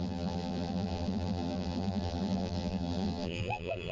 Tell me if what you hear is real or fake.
fake